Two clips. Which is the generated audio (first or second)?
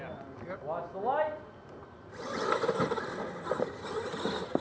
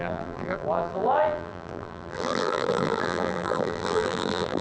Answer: second